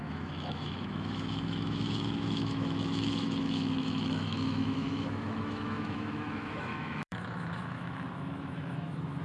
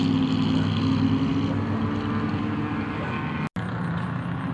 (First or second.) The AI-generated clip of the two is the first